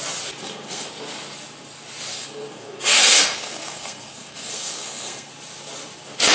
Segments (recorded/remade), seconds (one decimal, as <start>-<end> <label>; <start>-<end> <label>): 0.0-0.4 recorded; 0.4-0.9 remade; 0.9-2.1 recorded; 2.1-5.3 remade; 5.3-6.3 recorded